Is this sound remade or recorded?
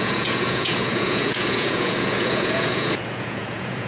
remade